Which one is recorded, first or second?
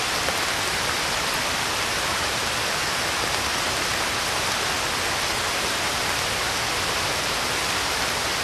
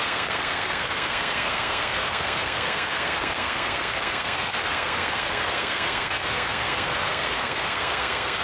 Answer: first